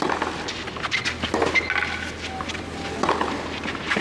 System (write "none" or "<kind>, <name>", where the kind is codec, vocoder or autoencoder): none